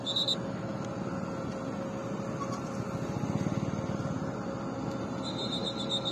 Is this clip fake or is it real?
real